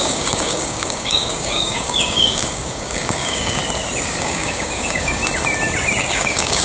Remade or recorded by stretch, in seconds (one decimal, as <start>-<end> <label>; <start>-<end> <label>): 0.0-3.6 remade; 3.6-4.2 recorded; 4.2-5.2 remade; 5.2-6.0 recorded; 6.0-6.6 remade